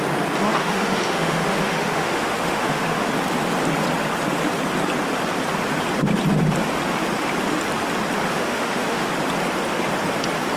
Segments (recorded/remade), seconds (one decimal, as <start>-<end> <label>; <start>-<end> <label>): 0.0-0.6 recorded; 0.6-3.1 remade; 3.1-8.3 recorded; 8.3-9.1 remade; 9.1-10.6 recorded

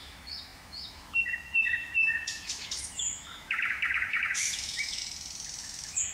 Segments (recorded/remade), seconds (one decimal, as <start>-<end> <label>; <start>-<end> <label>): 0.0-5.0 remade; 5.0-5.6 recorded; 5.6-6.1 remade

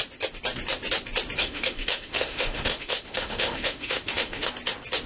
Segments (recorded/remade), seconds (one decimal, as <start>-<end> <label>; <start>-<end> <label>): 0.0-1.4 recorded; 1.4-4.5 remade; 4.5-5.1 recorded

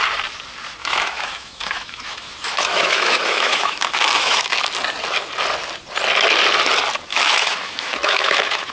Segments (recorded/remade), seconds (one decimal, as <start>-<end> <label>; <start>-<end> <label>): 0.0-0.8 recorded; 0.8-4.6 remade; 4.6-7.1 recorded; 7.1-8.7 remade

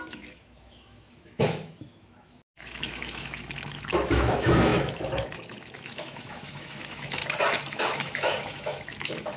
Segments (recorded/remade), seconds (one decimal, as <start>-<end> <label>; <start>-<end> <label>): 0.0-7.2 remade; 7.2-7.7 recorded; 7.7-9.4 remade

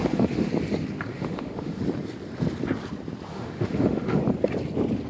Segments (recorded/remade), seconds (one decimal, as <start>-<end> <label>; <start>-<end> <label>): 0.0-0.5 remade; 0.5-1.1 recorded; 1.1-1.8 remade; 1.8-3.3 recorded; 3.3-4.2 remade; 4.2-5.1 recorded

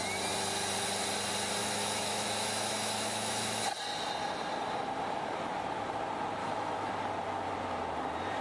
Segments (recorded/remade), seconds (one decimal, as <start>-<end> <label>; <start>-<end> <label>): 0.0-1.6 recorded; 1.6-3.6 remade; 3.6-6.4 recorded; 6.4-6.9 remade; 6.9-8.4 recorded